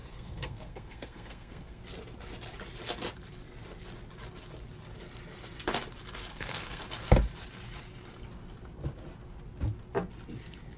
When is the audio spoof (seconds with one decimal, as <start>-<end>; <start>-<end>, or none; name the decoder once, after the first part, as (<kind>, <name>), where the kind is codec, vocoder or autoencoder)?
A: 0.0-1.8 (codec, SNAC); 6.3-6.8